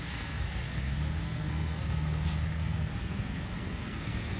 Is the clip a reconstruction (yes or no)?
yes